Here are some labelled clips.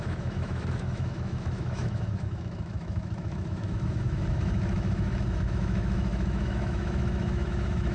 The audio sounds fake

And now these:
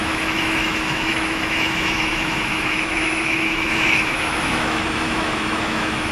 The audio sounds fake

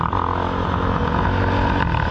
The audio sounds real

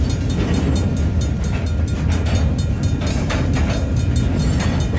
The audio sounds real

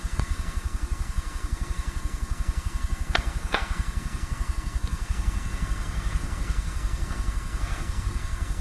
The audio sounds fake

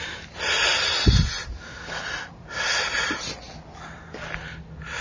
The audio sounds real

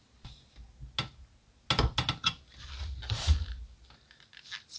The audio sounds real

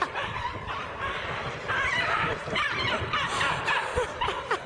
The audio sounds fake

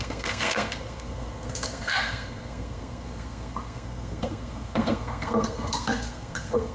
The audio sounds fake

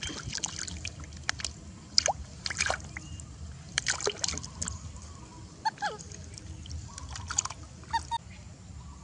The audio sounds real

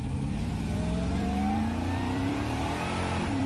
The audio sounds fake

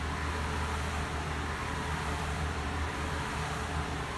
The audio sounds real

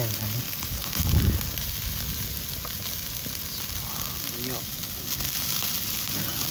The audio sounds real